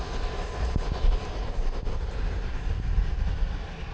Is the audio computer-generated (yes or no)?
no